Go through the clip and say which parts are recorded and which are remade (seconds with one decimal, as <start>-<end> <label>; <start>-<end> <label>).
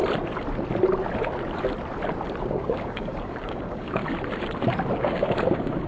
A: 0.0-2.4 recorded; 2.4-4.0 remade; 4.0-5.0 recorded; 5.0-5.9 remade